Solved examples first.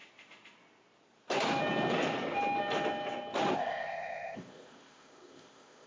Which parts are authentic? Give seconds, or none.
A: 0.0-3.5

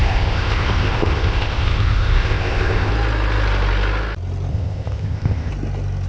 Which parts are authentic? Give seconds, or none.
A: 2.9-4.5; 5.5-6.1